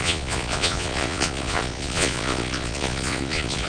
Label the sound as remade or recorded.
remade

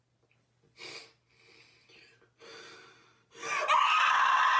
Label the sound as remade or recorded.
recorded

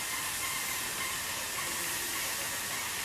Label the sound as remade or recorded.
recorded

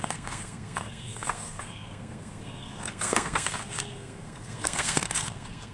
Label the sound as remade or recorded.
remade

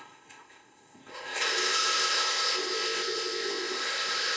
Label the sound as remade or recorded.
remade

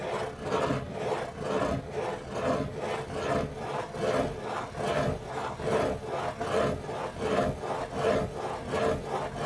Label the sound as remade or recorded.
recorded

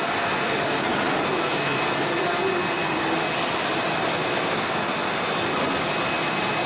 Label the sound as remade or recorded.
recorded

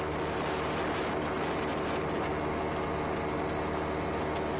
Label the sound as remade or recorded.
recorded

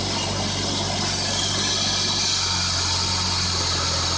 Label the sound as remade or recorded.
recorded